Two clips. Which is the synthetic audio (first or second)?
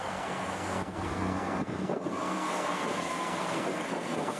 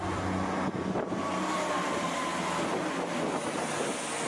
first